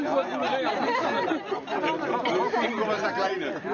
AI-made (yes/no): no